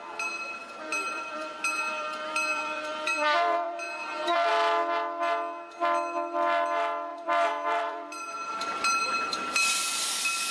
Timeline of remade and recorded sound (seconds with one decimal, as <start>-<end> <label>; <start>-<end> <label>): 0.0-0.6 recorded; 0.6-4.5 remade; 4.5-7.1 recorded; 7.1-10.0 remade; 10.0-10.5 recorded